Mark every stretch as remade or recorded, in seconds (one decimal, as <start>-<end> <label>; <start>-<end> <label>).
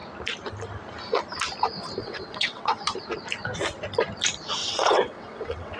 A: 0.0-2.0 recorded; 2.0-2.8 remade; 2.8-4.6 recorded; 4.6-5.8 remade